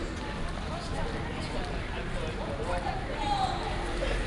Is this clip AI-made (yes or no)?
no